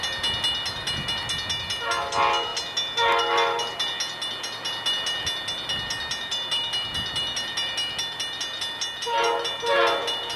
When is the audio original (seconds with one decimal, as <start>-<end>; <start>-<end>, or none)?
0.0-10.4